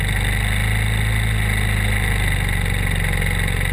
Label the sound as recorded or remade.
recorded